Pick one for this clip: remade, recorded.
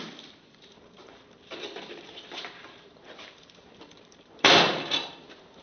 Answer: remade